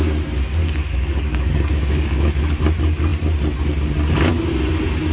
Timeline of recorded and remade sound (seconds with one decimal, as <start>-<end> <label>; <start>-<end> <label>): 0.0-0.6 recorded; 0.6-2.6 remade; 2.6-5.1 recorded